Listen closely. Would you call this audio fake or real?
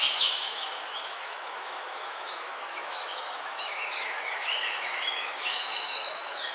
fake